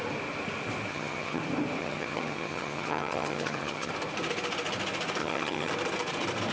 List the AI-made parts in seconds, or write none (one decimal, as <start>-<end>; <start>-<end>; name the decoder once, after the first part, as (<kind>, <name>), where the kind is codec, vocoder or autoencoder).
0.9-1.4 (vocoder, HiFi-GAN); 1.8-3.9; 5.2-5.7